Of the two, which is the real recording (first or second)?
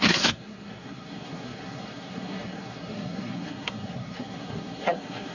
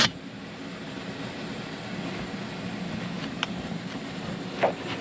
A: second